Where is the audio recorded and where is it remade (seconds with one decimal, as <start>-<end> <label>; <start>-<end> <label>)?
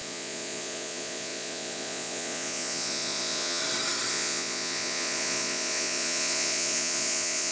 0.0-3.6 remade; 3.6-4.1 recorded; 4.1-7.5 remade